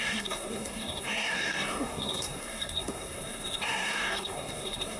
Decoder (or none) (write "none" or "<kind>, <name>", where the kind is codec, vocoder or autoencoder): codec, SNAC